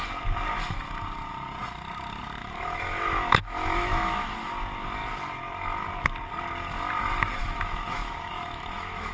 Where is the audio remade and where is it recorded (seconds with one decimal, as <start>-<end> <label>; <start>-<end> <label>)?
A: 0.0-2.4 recorded; 2.4-4.5 remade; 4.5-7.4 recorded; 7.4-9.1 remade